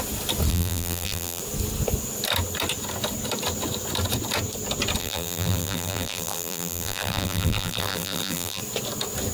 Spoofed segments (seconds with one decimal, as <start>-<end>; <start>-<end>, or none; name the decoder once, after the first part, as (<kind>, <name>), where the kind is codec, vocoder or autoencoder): 0.5-1.4 (vocoder, BigVGAN v2); 5.0-8.6